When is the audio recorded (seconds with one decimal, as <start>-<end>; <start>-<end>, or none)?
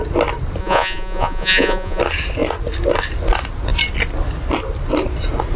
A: 0.0-0.6; 2.0-5.6